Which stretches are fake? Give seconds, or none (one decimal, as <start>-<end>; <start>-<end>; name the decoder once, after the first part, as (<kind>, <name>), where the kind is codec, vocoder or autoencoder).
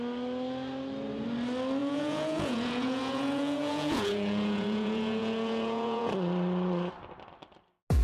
1.8-6.1 (vocoder, Vocos)